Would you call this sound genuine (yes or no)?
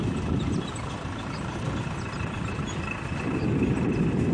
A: yes